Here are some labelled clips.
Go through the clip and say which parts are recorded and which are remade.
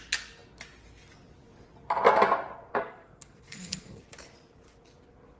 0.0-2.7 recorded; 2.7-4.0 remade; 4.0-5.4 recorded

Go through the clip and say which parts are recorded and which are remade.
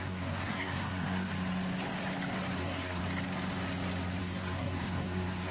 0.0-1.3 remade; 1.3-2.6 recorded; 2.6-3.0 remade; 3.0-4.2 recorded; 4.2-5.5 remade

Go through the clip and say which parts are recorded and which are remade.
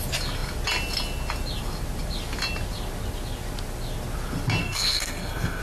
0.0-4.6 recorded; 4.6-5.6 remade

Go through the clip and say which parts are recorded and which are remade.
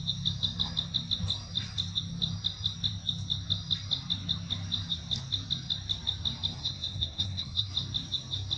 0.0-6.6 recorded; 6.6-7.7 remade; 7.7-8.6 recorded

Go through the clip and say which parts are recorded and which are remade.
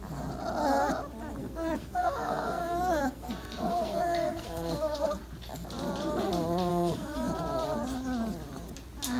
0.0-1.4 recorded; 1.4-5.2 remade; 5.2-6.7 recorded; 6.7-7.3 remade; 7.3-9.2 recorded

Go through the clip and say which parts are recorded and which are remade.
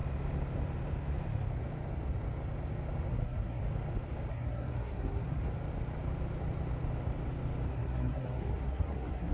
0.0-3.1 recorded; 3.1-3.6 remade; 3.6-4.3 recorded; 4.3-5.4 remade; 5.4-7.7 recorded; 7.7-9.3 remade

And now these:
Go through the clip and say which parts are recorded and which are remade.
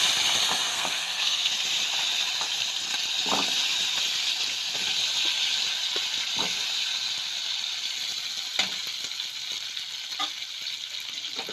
0.0-0.7 recorded; 0.7-1.5 remade; 1.5-11.5 recorded